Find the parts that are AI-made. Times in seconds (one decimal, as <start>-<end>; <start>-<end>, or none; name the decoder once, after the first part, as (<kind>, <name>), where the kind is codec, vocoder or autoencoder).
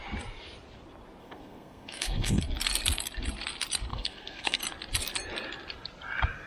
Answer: 1.2-2.4 (codec, SNAC); 3.9-4.6